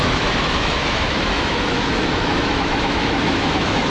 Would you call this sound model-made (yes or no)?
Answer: yes